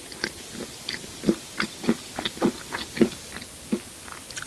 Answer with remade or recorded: recorded